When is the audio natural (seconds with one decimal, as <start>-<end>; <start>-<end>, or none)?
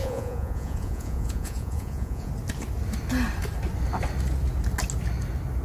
2.3-5.6